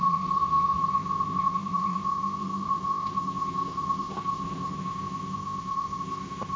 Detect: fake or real fake